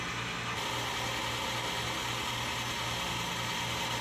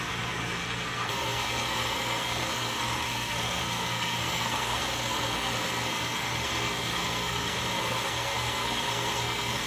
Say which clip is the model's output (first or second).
second